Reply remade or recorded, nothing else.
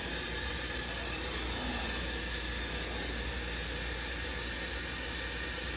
recorded